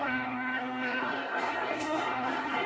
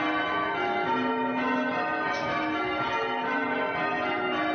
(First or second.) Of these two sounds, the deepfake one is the first